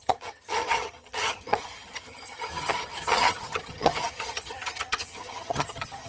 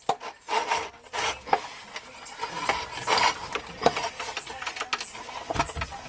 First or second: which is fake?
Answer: first